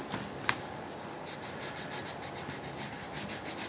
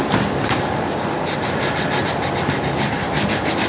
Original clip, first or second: first